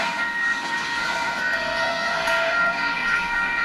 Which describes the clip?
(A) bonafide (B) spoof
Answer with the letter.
B